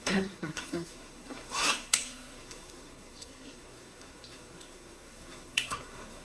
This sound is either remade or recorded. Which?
remade